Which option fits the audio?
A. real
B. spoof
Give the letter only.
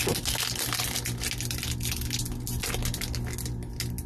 A